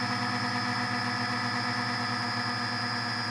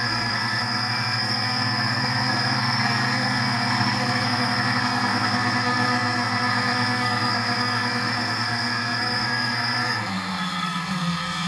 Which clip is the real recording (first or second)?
first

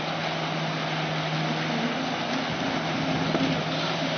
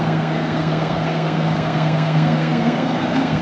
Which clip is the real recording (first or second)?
first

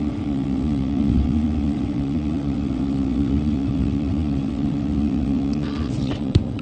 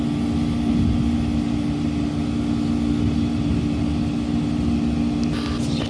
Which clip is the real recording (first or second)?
second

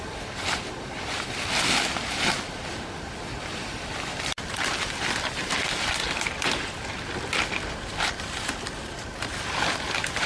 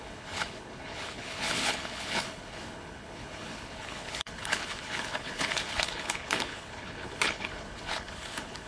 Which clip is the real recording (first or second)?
first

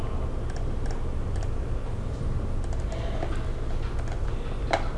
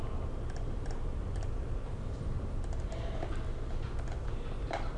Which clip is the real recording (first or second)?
first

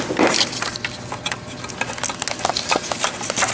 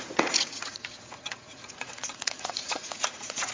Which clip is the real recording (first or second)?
first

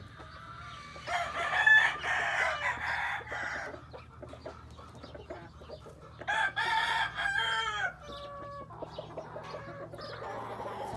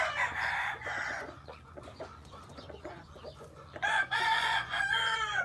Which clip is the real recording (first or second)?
first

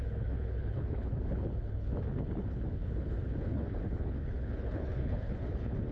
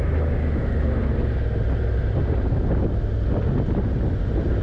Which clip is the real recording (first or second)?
second